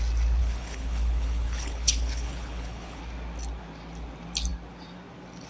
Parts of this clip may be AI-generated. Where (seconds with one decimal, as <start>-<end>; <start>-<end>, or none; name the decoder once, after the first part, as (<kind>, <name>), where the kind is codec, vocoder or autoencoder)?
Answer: 0.4-3.0 (codec, HILCodec)